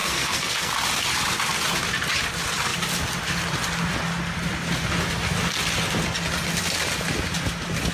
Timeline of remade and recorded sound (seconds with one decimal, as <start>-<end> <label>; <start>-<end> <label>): 0.0-0.7 remade; 0.7-7.9 recorded